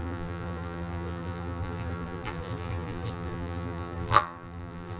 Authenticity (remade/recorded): remade